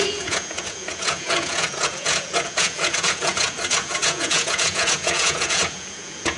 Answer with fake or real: fake